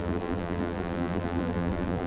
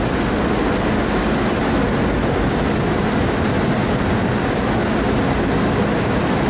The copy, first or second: first